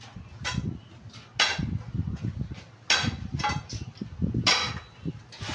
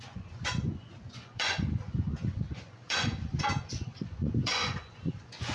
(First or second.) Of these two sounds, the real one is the first